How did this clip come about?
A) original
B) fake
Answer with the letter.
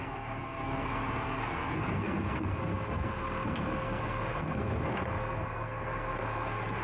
B